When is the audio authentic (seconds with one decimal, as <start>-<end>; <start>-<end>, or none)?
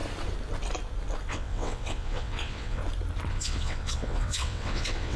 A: 0.0-1.3; 2.8-3.3